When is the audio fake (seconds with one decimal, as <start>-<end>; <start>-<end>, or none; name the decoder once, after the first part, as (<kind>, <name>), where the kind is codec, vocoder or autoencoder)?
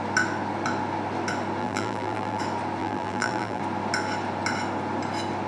1.6-2.4 (vocoder, BigVGAN v2); 2.8-3.6